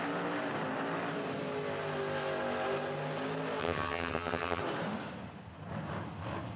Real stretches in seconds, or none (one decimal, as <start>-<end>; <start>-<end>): 0.0-3.6; 4.6-6.6